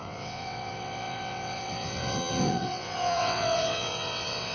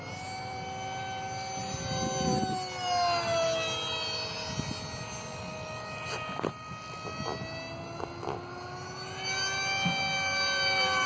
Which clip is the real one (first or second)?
second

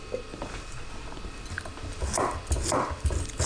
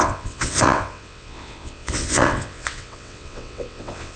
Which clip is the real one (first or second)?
first